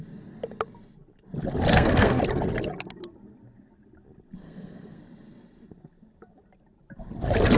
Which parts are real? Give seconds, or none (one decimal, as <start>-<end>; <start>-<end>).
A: 0.0-1.7; 2.2-4.4; 5.0-7.6